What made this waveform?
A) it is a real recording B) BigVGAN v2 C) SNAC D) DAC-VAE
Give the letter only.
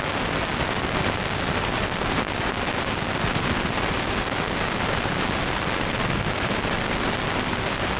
A